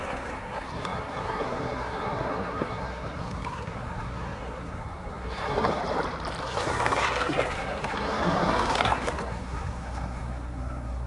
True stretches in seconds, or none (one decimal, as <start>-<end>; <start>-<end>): 5.8-6.4